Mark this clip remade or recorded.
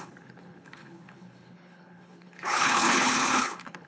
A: remade